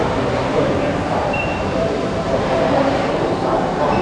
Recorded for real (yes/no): no